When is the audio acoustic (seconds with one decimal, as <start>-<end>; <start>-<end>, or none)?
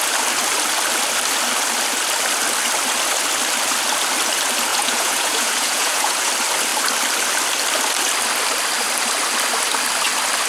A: 0.0-4.7; 6.3-10.5